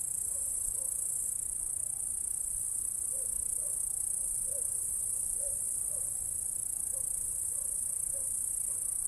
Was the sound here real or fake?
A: fake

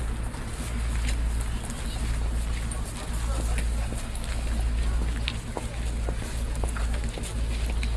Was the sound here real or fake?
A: real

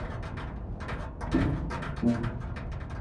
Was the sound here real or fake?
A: real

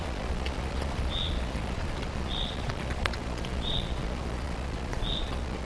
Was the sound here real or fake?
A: fake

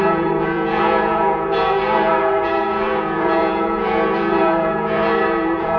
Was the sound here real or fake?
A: fake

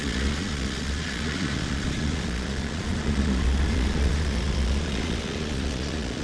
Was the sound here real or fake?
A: fake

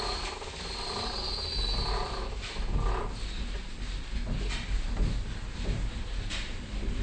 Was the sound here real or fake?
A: real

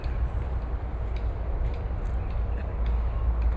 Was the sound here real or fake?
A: real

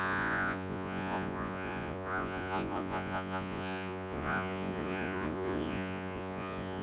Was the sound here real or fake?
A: fake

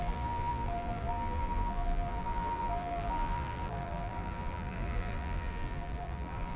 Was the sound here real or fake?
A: fake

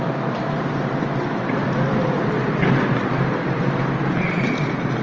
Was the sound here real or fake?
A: real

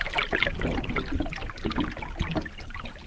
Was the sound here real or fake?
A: real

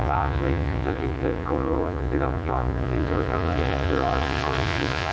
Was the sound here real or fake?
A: fake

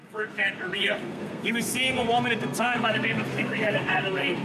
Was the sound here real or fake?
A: fake